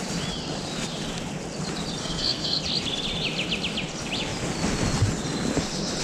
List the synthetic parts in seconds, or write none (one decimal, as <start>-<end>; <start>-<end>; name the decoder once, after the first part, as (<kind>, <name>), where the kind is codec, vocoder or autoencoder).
2.0-2.6 (codec, SNAC)